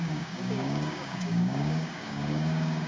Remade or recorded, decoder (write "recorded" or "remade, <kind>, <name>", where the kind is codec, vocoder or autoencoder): remade, codec, DAC